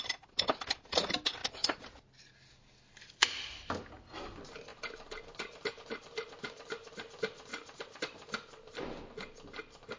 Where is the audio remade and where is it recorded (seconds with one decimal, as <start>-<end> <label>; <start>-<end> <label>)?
0.0-10.0 recorded